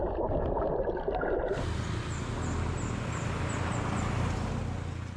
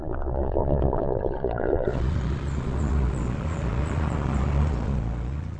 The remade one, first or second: second